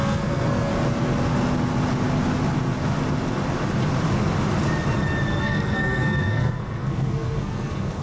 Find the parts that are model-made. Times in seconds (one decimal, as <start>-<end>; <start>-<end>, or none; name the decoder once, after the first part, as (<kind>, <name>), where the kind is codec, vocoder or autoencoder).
0.0-0.7 (codec, SNAC); 5.4-8.0